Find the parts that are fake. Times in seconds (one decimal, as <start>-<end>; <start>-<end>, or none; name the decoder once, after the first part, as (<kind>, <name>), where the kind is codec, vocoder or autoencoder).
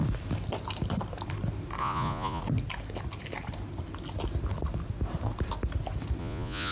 1.8-2.4 (vocoder, Vocos); 6.2-6.7